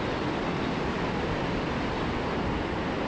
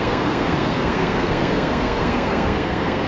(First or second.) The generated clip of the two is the second